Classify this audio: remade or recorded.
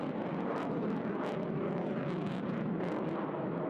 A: recorded